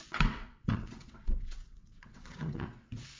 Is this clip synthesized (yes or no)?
yes